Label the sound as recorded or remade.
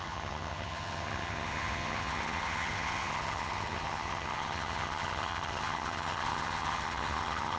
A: remade